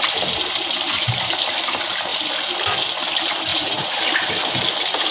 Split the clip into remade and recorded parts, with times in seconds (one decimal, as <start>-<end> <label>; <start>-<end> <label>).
0.0-3.5 recorded; 3.5-4.0 remade; 4.0-5.1 recorded